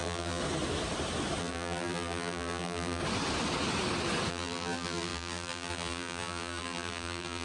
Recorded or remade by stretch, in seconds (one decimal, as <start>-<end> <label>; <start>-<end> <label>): 0.0-0.4 remade; 0.4-1.4 recorded; 1.4-3.0 remade; 3.0-4.3 recorded; 4.3-7.4 remade